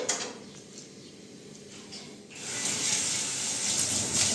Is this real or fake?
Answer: real